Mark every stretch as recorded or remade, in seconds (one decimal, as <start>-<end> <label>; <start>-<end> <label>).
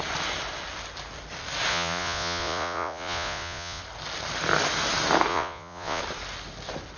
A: 0.0-1.7 recorded; 1.7-3.8 remade; 3.8-5.3 recorded; 5.3-6.0 remade; 6.0-7.0 recorded